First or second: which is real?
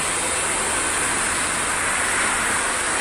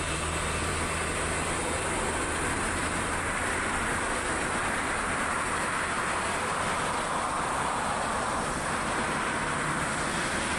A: first